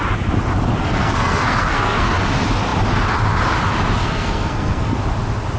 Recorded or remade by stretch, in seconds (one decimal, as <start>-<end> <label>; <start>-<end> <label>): 0.0-0.8 recorded; 0.8-2.1 remade; 2.1-4.0 recorded; 4.0-5.0 remade; 5.0-5.6 recorded